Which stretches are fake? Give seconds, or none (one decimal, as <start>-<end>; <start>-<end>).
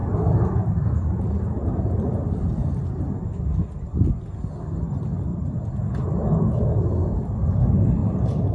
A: 5.3-5.8; 8.0-8.5